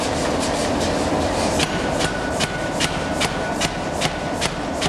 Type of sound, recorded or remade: recorded